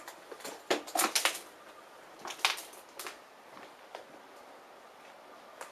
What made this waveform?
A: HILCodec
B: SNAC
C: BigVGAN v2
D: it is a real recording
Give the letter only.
D